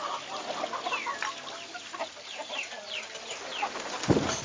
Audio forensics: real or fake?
real